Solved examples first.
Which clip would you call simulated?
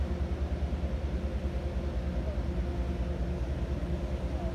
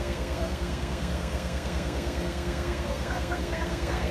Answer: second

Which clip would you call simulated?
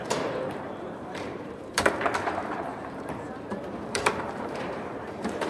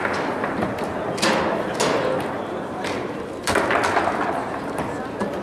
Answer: first